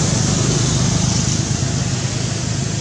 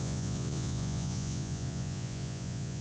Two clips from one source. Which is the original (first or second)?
first